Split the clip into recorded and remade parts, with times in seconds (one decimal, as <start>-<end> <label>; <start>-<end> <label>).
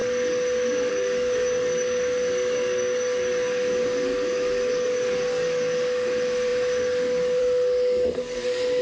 0.0-8.8 remade